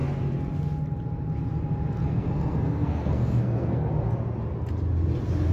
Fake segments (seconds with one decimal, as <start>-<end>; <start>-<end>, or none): 2.0-3.9